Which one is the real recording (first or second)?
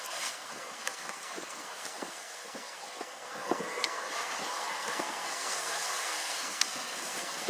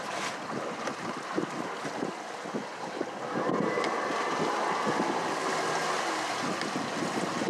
second